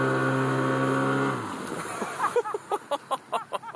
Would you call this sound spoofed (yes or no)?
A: no